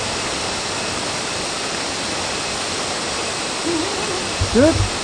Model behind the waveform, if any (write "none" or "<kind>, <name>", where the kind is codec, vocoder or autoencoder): none